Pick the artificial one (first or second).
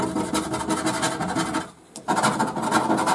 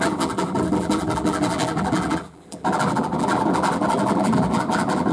second